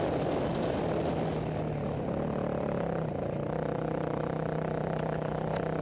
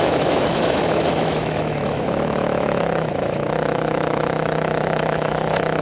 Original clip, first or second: first